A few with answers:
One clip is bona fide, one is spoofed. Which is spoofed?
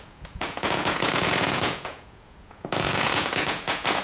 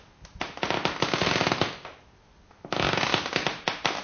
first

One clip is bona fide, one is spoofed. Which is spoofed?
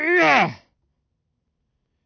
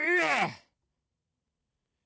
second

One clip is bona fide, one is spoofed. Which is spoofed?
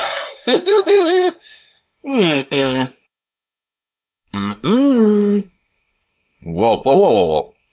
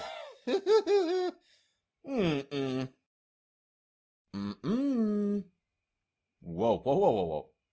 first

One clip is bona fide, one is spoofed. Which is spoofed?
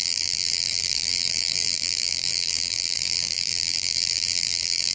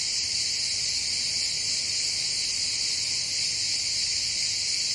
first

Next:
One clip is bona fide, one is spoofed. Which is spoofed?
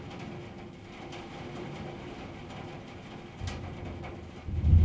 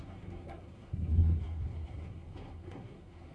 second